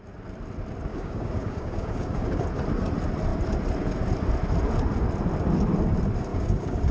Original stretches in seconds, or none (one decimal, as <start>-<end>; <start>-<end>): 0.0-0.9; 2.4-6.3